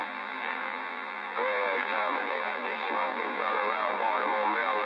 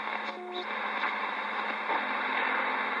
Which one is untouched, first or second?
second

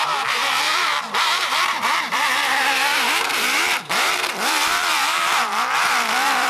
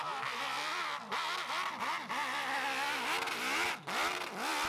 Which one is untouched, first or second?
second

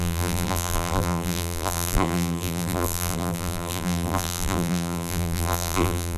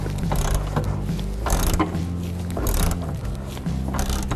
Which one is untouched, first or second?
second